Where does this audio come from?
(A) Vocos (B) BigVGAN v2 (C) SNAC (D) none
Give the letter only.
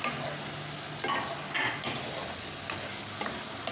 D